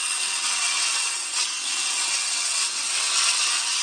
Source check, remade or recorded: remade